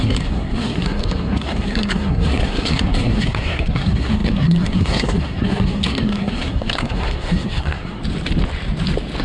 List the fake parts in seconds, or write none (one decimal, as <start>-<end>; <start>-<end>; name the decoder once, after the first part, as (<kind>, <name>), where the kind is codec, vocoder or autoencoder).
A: 0.0-8.0 (codec, SNAC)